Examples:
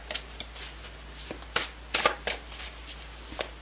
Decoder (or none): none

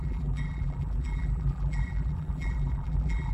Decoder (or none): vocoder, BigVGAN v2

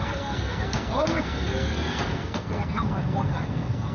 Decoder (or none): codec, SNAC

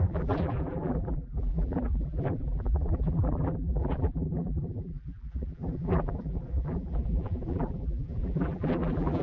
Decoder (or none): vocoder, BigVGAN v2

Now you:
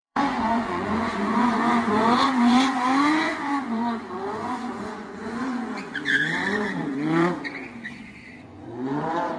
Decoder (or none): vocoder, Vocos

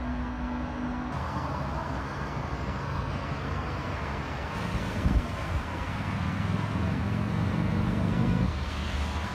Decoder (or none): codec, SNAC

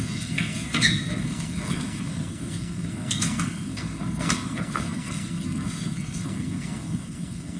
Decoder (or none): codec, SNAC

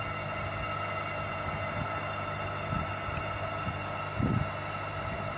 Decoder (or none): none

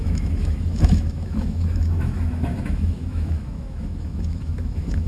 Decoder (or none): autoencoder, DAC-VAE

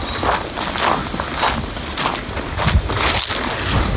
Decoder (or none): none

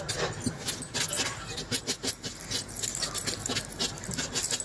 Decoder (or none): none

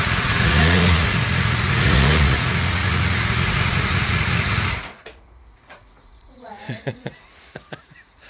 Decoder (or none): vocoder, Vocos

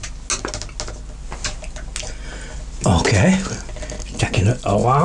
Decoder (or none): none